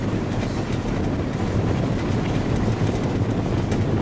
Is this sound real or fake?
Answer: real